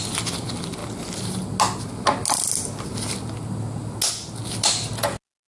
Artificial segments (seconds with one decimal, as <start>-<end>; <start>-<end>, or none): none